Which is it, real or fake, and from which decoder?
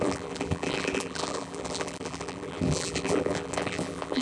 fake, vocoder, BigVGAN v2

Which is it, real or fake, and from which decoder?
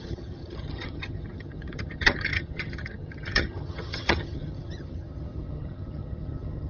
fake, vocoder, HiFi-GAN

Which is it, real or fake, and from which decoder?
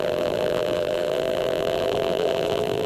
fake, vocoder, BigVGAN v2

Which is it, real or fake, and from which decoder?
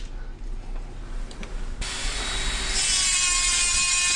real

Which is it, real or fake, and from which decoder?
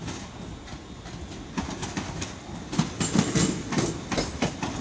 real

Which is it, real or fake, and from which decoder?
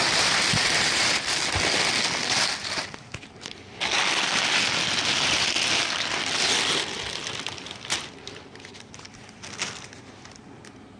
real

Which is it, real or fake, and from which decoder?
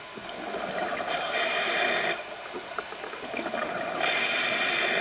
real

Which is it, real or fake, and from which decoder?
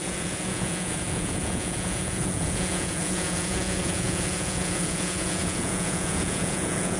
fake, vocoder, Vocos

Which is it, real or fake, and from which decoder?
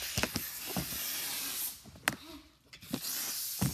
real